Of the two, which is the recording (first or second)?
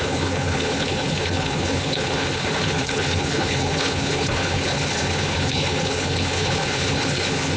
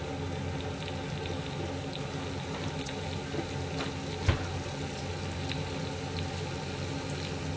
second